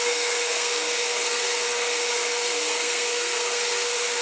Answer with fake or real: fake